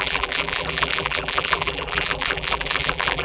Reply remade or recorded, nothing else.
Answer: remade